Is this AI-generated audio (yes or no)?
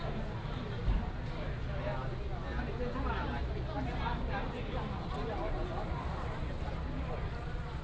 no